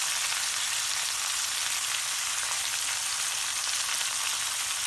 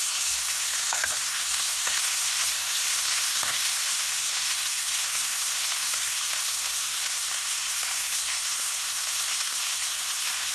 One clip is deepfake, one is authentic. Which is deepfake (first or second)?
second